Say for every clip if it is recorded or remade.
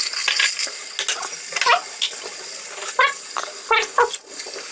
recorded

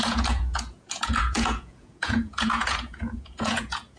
remade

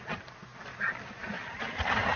recorded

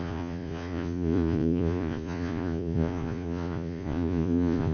remade